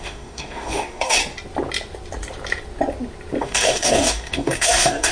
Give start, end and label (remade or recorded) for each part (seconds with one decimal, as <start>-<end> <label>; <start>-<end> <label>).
0.0-1.2 remade; 1.2-3.4 recorded; 3.4-5.1 remade